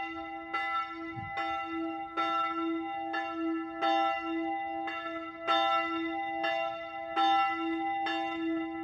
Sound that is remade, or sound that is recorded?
recorded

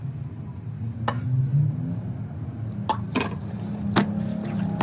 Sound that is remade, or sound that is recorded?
recorded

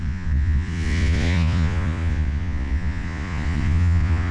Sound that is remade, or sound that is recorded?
remade